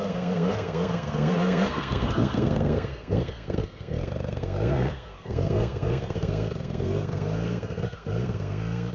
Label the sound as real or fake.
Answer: fake